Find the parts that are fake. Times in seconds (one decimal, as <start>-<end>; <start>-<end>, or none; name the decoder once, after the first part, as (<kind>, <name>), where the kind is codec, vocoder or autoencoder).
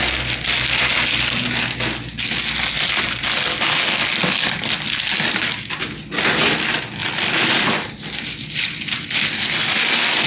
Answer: none